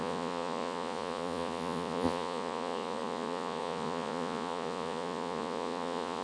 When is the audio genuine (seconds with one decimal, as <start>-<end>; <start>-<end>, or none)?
none